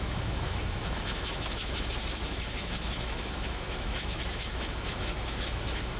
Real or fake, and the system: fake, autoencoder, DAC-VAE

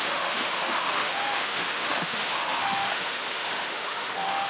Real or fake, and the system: fake, autoencoder, DAC-VAE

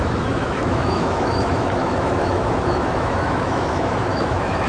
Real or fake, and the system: fake, autoencoder, DAC-VAE